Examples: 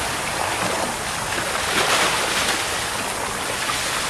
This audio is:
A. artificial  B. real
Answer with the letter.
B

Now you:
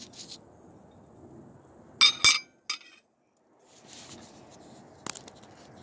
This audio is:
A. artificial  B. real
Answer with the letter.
B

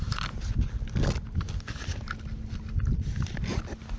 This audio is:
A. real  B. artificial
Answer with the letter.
A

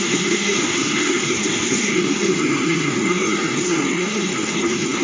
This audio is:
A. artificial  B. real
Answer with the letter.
A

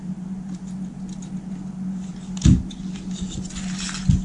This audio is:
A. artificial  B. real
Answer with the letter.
B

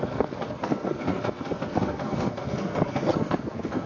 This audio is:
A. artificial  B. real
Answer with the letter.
A